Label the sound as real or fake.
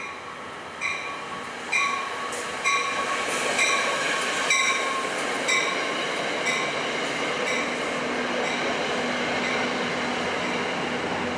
real